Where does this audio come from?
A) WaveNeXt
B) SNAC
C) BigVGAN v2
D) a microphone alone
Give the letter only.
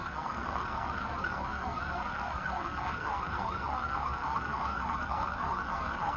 B